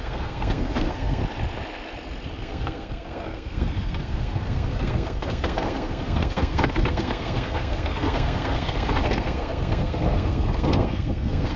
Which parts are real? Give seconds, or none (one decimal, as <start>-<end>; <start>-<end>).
1.2-2.4

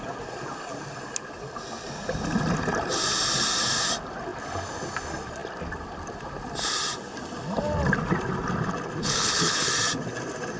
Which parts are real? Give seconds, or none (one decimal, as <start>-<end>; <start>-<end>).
0.0-9.0; 9.7-10.6

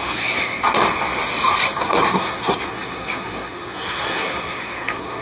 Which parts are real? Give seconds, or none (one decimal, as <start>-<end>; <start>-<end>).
0.6-1.8

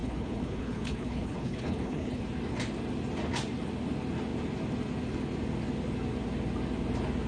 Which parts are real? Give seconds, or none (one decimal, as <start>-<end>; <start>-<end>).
2.2-7.3

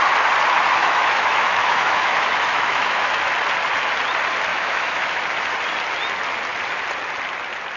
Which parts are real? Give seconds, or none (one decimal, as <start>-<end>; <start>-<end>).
0.0-0.8; 3.1-4.5; 5.2-7.8